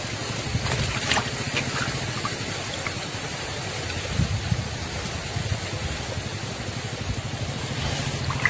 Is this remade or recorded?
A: recorded